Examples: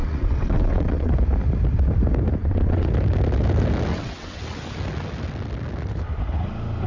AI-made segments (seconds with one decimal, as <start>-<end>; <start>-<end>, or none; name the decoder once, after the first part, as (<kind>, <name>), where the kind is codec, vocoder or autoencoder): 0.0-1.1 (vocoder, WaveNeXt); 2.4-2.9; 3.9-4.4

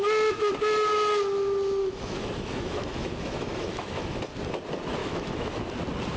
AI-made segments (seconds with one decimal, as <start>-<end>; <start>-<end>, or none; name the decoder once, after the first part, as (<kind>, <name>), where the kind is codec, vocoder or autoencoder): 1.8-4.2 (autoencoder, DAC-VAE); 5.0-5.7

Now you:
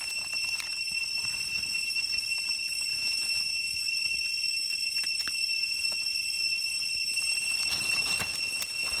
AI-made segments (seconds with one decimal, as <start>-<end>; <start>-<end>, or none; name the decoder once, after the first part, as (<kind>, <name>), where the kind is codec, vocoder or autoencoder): 2.9-3.7 (vocoder, Vocos)